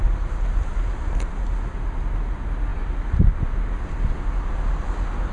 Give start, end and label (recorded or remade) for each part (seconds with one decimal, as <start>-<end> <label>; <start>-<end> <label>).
0.0-5.3 recorded